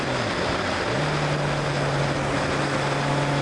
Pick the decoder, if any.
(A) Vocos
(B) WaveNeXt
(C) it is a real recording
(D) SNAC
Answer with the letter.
C